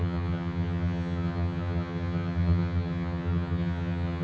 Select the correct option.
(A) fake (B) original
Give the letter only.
A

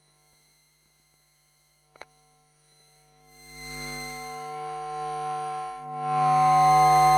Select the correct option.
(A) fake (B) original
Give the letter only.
A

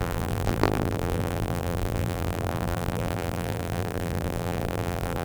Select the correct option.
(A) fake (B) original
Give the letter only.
A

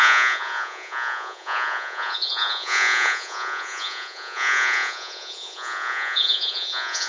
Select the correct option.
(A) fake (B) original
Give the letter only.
A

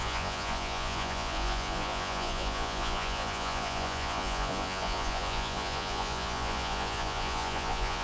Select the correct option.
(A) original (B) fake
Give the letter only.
B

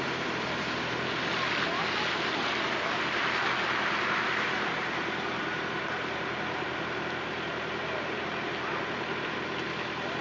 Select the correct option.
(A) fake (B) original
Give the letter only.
B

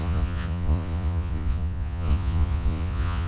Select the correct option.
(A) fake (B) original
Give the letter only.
A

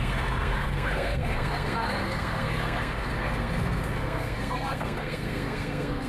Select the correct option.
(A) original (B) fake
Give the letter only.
B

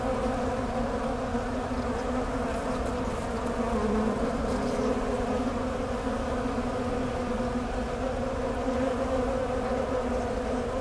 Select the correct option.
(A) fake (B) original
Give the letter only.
B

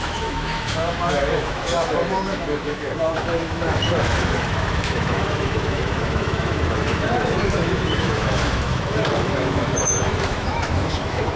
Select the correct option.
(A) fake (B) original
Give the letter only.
A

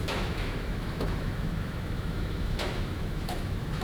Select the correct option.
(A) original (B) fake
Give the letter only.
B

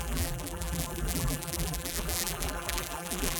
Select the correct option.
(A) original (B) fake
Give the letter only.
B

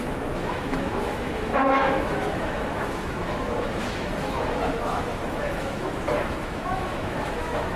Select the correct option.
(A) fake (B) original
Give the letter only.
A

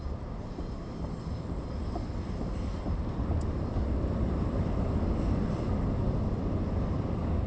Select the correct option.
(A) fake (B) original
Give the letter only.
B